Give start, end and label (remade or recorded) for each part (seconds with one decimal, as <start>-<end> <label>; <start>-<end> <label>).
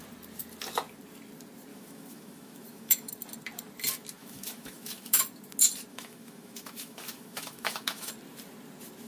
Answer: 0.0-1.7 recorded; 1.7-3.1 remade; 3.1-4.2 recorded; 4.2-5.2 remade; 5.2-5.9 recorded; 5.9-8.1 remade; 8.1-9.1 recorded